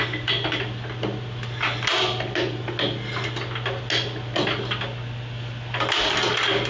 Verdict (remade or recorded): recorded